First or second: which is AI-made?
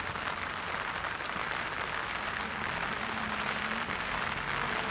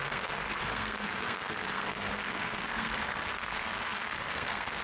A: second